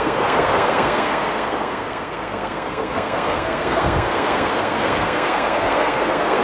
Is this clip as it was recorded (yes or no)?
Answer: no